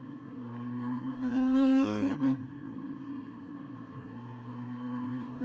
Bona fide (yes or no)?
no